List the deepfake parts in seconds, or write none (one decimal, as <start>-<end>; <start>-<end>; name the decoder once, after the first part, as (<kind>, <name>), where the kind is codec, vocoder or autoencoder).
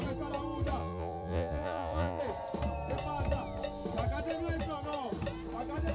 0.8-2.2 (vocoder, Vocos)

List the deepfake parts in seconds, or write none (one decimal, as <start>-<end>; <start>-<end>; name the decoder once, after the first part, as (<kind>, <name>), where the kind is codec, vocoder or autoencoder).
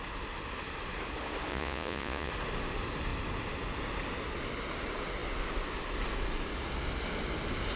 1.5-2.3 (vocoder, Vocos)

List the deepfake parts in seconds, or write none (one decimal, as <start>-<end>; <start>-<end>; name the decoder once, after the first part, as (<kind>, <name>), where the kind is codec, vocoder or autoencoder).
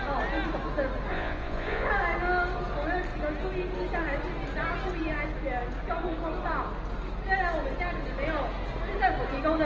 1.1-1.9 (vocoder, Vocos)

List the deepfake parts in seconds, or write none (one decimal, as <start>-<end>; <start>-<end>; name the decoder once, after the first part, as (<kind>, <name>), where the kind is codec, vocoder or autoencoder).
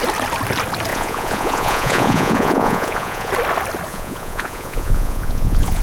0.9-3.3 (vocoder, Vocos); 3.9-5.8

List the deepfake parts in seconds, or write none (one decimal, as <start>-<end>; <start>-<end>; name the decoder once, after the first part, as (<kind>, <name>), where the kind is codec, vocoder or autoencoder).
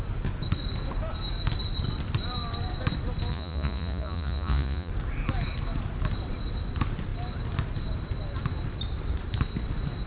3.3-4.9 (vocoder, Vocos)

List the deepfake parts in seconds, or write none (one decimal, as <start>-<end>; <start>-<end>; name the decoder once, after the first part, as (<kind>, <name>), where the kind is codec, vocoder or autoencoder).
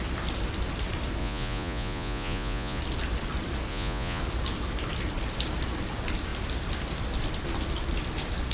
1.2-2.8 (vocoder, Vocos); 3.7-4.2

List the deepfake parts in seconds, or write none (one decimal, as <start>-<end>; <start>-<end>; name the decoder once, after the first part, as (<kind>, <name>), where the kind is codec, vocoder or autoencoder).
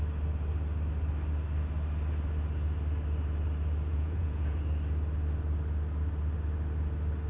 3.9-4.6 (vocoder, Vocos)